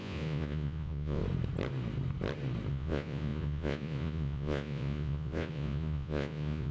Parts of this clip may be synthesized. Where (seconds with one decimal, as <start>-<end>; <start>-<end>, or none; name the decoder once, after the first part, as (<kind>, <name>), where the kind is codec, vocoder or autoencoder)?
0.0-1.2 (vocoder, Vocos); 2.7-6.7